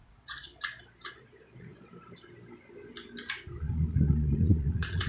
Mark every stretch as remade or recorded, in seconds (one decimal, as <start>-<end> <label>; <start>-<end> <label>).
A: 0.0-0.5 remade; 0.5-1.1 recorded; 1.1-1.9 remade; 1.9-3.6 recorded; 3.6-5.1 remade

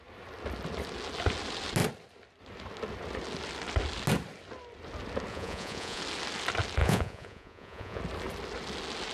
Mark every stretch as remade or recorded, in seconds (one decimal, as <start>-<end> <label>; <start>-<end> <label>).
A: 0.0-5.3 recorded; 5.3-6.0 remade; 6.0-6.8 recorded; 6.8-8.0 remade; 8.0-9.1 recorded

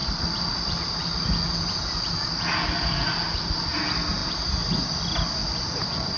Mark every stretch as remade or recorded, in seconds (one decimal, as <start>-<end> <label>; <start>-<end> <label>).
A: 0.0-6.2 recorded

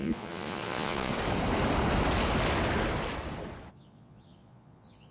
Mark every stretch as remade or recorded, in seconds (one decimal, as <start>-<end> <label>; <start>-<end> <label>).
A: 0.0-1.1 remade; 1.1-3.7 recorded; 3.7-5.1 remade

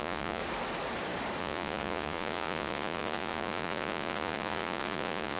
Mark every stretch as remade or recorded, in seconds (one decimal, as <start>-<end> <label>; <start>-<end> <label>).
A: 0.0-0.4 remade; 0.4-1.4 recorded; 1.4-5.4 remade

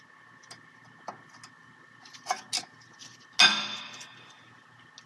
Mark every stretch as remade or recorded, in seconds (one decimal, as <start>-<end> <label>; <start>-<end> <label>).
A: 0.0-5.1 recorded